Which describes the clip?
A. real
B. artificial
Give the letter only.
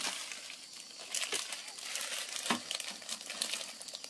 A